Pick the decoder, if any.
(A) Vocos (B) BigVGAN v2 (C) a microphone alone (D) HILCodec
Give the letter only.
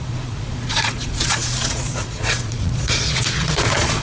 A